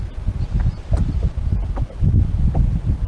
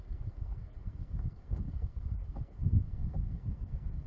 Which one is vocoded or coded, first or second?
second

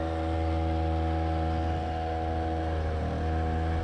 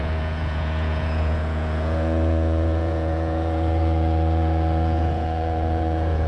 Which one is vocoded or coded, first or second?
second